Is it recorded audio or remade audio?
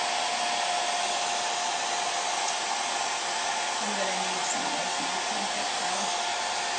recorded